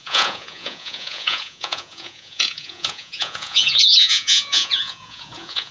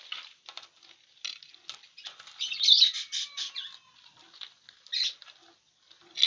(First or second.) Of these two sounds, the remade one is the first